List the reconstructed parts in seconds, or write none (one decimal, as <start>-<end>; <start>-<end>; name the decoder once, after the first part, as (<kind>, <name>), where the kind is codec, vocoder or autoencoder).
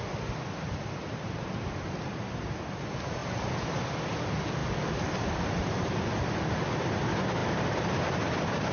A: 4.6-6.0 (vocoder, BigVGAN v2)